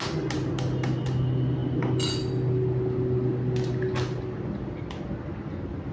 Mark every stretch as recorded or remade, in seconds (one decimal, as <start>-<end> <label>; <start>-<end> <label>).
0.0-5.9 recorded